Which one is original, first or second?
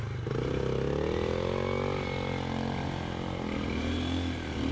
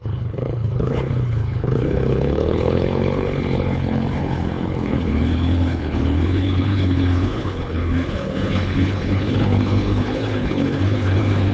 first